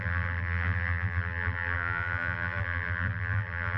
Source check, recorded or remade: remade